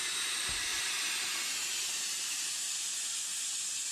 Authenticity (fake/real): real